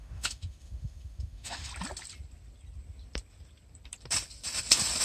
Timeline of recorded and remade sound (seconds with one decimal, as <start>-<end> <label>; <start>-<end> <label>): 0.0-1.7 remade; 1.7-5.0 recorded